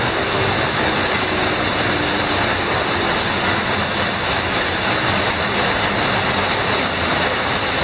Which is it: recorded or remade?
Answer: recorded